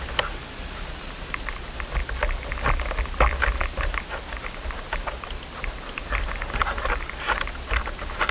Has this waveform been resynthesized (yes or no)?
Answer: no